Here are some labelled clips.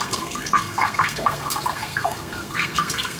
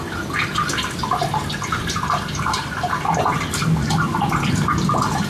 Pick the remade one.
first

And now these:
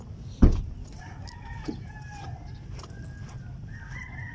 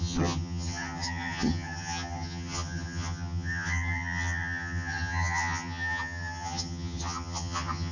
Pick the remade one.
second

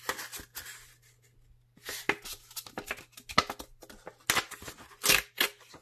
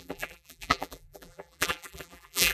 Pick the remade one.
second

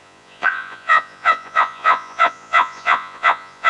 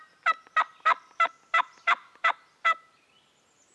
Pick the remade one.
first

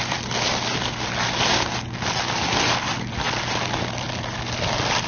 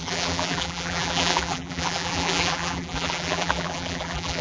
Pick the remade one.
second